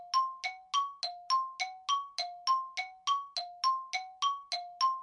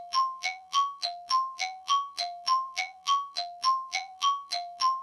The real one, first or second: first